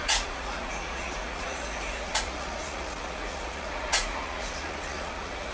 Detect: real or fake fake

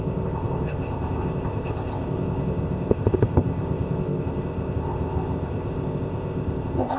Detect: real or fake fake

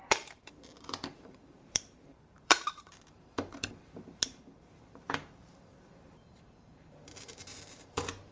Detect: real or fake fake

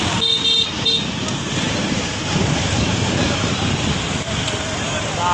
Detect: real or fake real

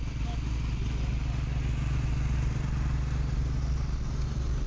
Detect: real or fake real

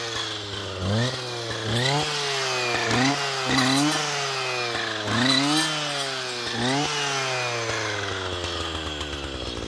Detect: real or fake real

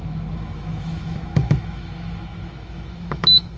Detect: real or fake fake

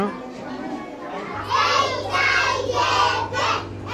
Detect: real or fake real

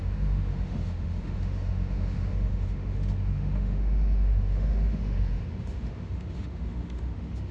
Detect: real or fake fake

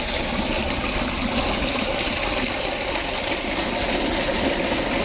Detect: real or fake real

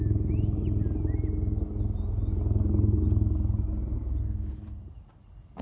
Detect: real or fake real